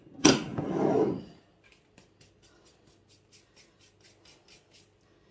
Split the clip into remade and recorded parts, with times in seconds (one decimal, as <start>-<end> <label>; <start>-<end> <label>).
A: 0.0-5.3 recorded

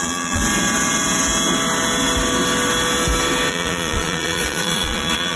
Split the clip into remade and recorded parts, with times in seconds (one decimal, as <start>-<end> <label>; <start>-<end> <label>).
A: 0.0-0.4 remade; 0.4-3.5 recorded; 3.5-5.4 remade

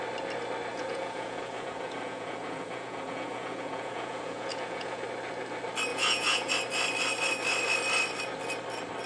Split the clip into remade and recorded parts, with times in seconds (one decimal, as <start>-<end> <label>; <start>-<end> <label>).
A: 0.0-0.7 recorded; 0.7-5.0 remade; 5.0-5.9 recorded; 5.9-6.5 remade; 6.5-9.1 recorded

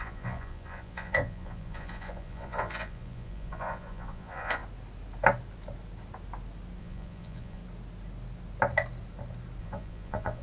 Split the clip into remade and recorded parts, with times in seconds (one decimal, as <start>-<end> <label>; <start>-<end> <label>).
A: 0.0-4.6 remade; 4.6-6.8 recorded; 6.8-7.6 remade; 7.6-9.6 recorded; 9.6-10.4 remade

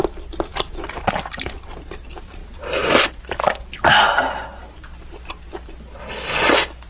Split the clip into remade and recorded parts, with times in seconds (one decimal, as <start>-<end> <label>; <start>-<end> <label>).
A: 0.0-6.9 recorded

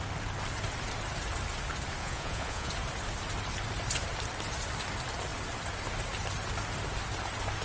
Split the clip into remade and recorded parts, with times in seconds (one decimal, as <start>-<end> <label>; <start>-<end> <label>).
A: 0.0-2.0 recorded; 2.0-2.7 remade; 2.7-7.6 recorded

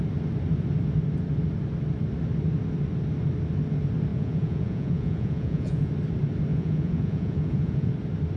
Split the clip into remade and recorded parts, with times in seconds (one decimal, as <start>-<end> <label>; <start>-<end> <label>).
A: 0.0-4.1 recorded; 4.1-5.9 remade; 5.9-6.5 recorded; 6.5-7.9 remade; 7.9-8.4 recorded

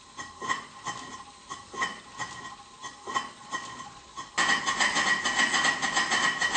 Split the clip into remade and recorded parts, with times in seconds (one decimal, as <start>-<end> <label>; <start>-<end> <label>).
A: 0.0-3.4 recorded; 3.4-4.3 remade; 4.3-6.6 recorded